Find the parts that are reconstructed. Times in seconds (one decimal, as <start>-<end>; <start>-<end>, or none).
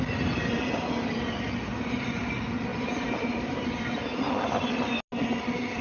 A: 1.7-2.3; 2.7-4.0